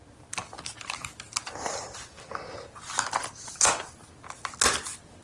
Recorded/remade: recorded